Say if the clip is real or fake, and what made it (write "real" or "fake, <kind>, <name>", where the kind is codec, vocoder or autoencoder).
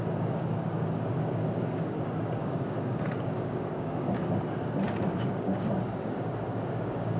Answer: fake, codec, DAC